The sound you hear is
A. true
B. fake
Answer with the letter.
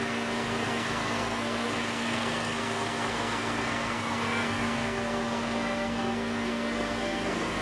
B